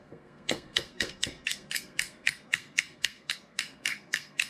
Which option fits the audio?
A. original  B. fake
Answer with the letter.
B